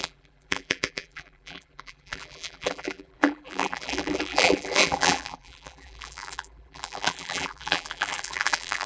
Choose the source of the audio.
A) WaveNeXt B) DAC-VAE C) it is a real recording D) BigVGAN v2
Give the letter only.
D